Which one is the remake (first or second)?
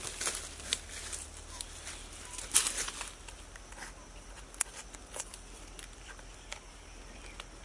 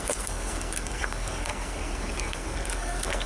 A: second